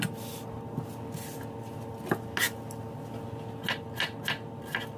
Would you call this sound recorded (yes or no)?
yes